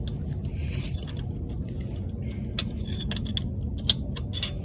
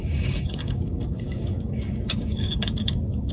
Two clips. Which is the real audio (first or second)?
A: first